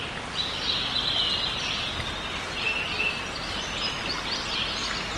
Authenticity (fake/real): real